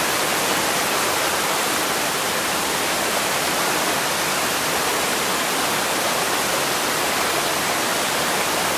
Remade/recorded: recorded